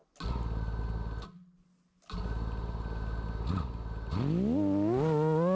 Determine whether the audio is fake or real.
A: real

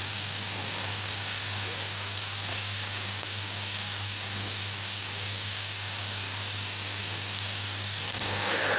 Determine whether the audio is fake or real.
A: fake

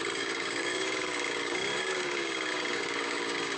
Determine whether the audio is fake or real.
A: fake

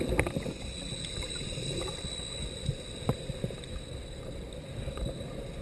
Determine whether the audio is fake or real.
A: real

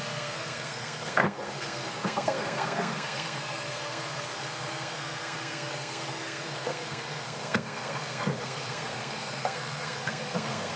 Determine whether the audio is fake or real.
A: fake